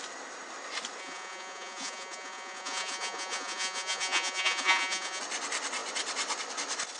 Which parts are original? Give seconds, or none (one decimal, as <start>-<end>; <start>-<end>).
0.0-1.0; 5.2-7.0